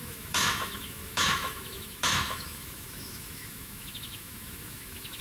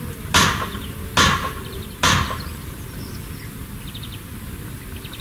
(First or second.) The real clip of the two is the second